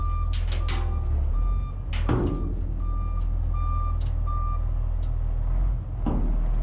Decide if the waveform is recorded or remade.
recorded